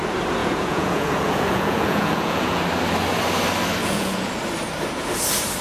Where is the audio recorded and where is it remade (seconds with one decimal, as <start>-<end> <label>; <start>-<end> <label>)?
0.0-0.4 recorded; 0.4-2.6 remade; 2.6-3.8 recorded; 3.8-4.3 remade; 4.3-5.6 recorded

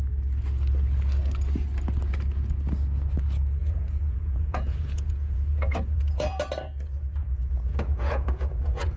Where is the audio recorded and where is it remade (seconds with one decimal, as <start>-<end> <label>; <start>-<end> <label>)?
0.0-3.6 recorded; 3.6-6.4 remade; 6.4-7.2 recorded; 7.2-9.0 remade